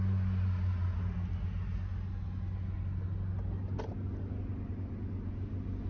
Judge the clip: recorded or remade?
recorded